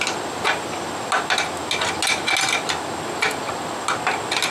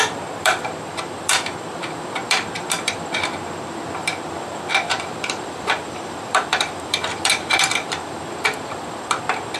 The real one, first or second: first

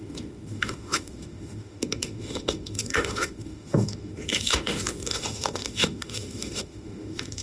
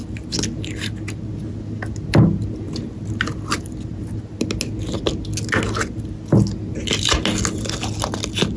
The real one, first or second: second